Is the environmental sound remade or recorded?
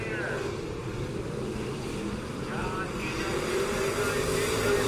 recorded